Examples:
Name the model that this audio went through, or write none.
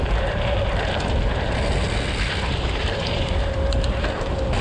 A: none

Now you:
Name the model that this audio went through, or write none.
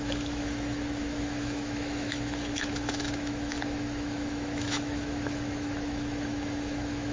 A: autoencoder, DAC-VAE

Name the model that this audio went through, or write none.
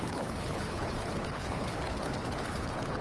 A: codec, HILCodec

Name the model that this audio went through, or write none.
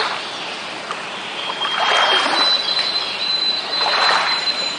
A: none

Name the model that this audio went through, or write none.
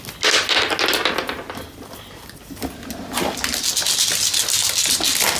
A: none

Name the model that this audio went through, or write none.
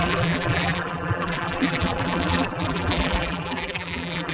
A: vocoder, BigVGAN v2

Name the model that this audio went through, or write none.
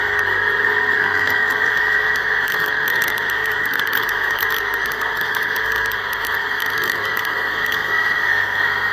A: codec, SNAC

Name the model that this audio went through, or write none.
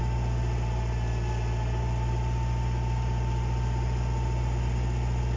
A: none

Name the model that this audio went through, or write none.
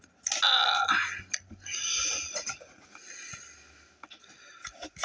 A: none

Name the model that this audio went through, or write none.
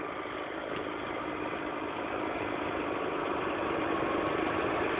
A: none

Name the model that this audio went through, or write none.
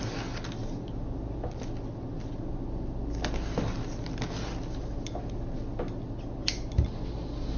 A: none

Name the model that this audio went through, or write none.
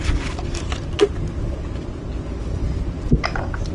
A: none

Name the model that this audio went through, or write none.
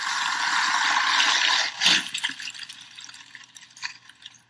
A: none